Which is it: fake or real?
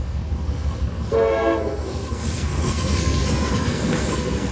fake